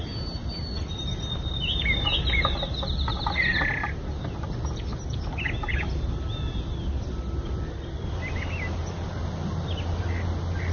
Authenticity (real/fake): real